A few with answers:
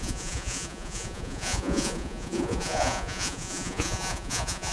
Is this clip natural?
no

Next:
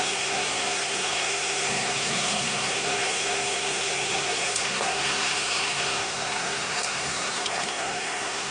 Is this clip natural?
no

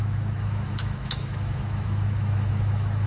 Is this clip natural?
no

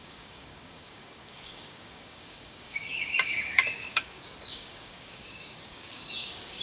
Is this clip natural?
no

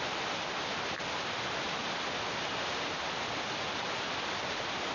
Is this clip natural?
yes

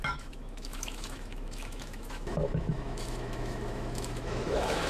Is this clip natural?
no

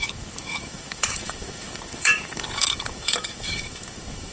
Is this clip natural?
no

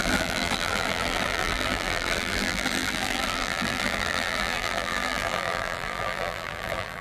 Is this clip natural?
no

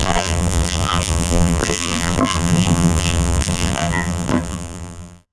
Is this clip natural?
no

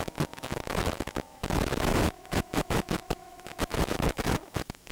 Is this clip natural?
no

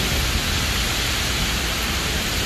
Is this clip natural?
yes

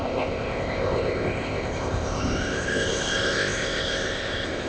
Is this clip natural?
no